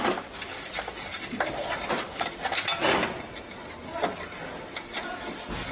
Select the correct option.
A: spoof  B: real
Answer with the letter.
B